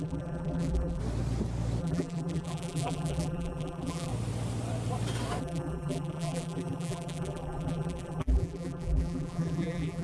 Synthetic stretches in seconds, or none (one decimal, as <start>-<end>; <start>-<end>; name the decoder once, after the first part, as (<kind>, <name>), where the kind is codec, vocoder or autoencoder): 0.0-1.0 (vocoder, BigVGAN v2); 1.8-4.1; 5.4-10.0